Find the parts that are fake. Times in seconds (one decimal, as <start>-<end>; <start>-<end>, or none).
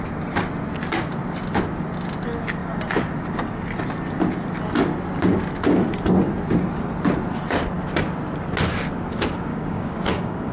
9.5-10.5